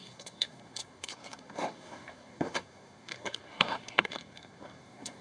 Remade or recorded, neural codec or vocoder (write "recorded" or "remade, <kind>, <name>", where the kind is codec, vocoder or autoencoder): remade, codec, SNAC